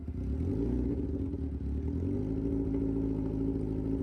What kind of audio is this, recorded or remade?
recorded